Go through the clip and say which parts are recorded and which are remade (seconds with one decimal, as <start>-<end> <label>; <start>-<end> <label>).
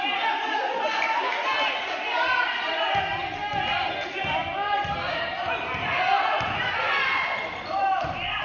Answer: 0.0-8.4 recorded